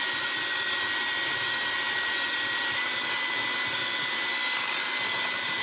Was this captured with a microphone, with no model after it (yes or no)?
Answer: yes